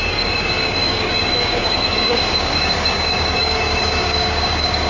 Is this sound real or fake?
fake